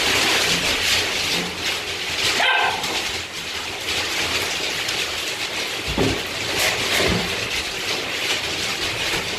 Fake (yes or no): no